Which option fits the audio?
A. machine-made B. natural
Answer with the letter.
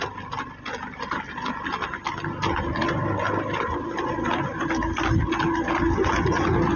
B